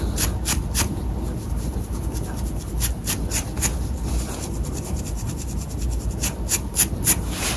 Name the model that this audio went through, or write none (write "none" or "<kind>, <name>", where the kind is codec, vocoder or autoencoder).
none